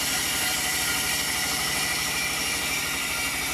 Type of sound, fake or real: fake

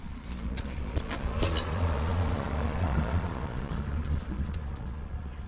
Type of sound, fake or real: fake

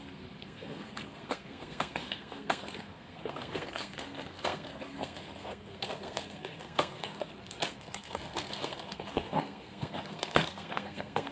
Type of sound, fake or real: fake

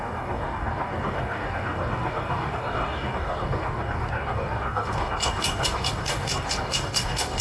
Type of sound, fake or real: fake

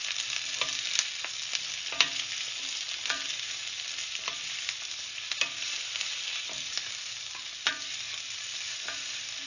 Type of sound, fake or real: real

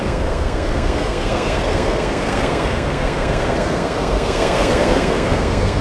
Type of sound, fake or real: fake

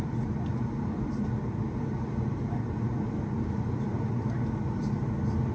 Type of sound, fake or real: real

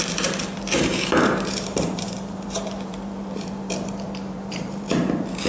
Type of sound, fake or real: fake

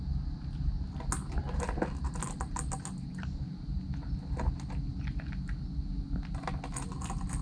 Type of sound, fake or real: real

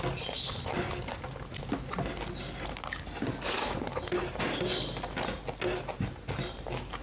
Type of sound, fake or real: real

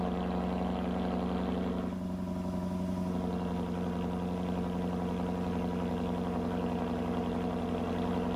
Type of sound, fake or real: real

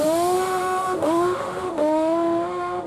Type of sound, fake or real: fake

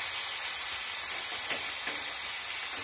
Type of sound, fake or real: real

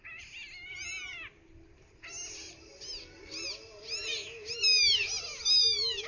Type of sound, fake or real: real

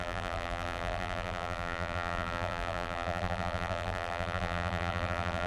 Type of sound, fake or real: fake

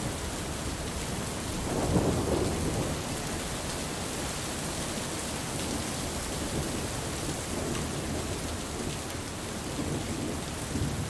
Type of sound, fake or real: real